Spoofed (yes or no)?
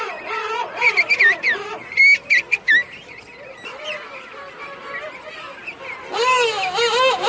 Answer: no